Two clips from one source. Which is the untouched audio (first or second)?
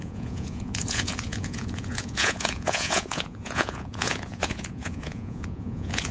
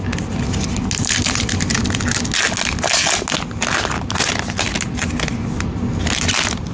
second